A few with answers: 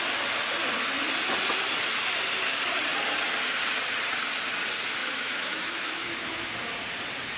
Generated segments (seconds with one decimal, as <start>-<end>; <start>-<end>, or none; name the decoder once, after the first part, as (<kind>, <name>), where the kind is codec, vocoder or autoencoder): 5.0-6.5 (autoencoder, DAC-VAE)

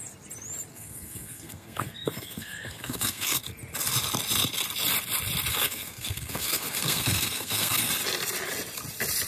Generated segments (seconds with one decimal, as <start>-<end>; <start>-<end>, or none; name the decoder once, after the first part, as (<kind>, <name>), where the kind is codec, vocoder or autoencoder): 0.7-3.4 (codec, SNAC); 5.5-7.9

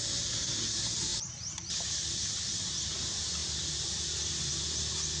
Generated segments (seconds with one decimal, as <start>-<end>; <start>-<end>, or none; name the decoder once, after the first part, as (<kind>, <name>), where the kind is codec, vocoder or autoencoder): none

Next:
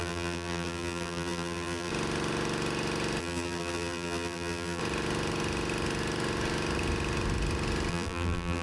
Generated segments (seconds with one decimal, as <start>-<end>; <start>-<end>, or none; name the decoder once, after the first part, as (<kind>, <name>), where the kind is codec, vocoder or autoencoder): 0.0-1.9 (vocoder, BigVGAN v2); 3.2-4.8; 7.9-8.6

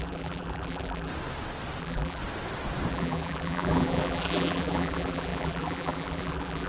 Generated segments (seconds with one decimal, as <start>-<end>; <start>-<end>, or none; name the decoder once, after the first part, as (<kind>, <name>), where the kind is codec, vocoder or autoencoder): 0.0-1.1 (vocoder, BigVGAN v2); 1.8-2.2; 2.9-6.7